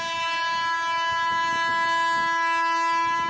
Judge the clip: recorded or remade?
recorded